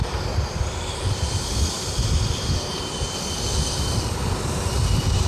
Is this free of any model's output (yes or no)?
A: yes